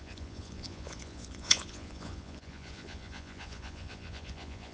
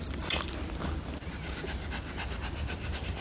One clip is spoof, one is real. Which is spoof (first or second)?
first